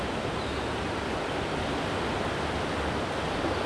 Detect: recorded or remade recorded